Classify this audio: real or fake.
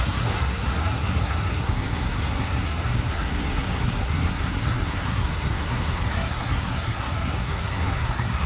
fake